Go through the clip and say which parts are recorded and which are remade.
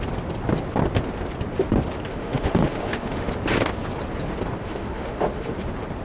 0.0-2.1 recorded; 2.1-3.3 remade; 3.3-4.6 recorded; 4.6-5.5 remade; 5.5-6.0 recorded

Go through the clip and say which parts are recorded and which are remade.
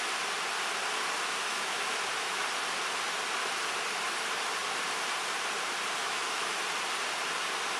0.0-1.5 recorded; 1.5-2.4 remade; 2.4-6.0 recorded; 6.0-6.6 remade; 6.6-7.8 recorded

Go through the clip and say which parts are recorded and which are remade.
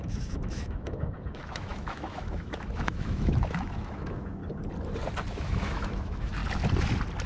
0.0-4.4 remade; 4.4-5.3 recorded; 5.3-6.4 remade; 6.4-7.3 recorded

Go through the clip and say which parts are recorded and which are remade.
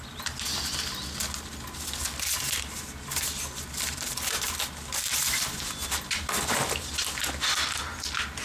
0.0-8.4 recorded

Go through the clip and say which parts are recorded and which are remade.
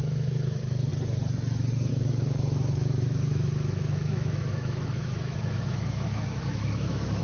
0.0-0.9 remade; 0.9-1.9 recorded; 1.9-7.2 remade